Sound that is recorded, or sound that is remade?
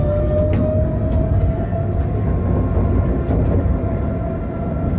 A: recorded